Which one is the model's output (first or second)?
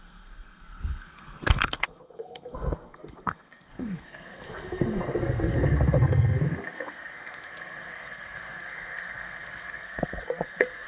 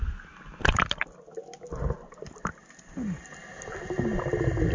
first